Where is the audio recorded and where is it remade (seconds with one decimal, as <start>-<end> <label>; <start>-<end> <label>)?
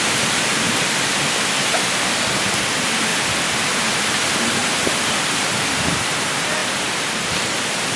0.0-3.1 remade; 3.1-4.1 recorded; 4.1-4.6 remade; 4.6-5.3 recorded; 5.3-8.0 remade